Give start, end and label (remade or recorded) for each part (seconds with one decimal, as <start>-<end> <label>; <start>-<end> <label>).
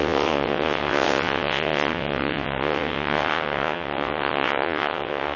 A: 0.0-5.4 remade